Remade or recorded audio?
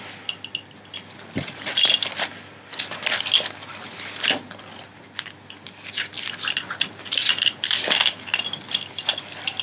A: recorded